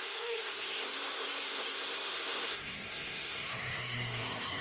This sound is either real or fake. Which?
fake